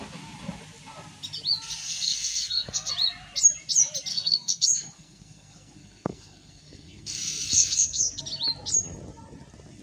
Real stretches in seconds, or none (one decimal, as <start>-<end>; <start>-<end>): 0.0-1.8; 2.9-4.1; 8.2-9.8